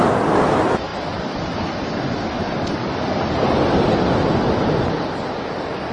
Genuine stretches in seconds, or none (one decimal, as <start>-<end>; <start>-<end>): 0.0-5.9